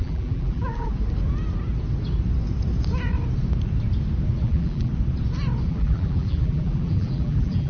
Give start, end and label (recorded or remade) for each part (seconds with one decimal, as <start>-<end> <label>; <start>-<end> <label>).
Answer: 0.0-0.9 remade; 0.9-4.4 recorded; 4.4-4.9 remade; 4.9-5.7 recorded; 5.7-7.7 remade